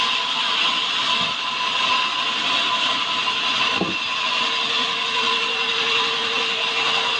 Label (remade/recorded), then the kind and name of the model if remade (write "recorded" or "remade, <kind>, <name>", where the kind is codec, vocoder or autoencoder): recorded